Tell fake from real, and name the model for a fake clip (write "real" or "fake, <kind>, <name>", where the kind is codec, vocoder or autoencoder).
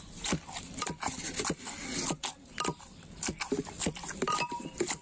real